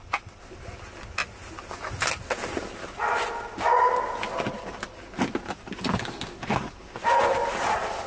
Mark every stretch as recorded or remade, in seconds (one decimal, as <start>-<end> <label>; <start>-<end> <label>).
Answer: 0.0-8.1 recorded